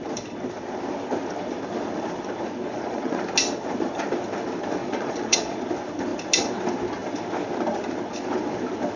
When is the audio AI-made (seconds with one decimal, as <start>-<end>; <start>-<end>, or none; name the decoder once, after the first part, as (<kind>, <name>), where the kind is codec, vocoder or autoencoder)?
2.7-3.2 (vocoder, Vocos); 4.8-5.6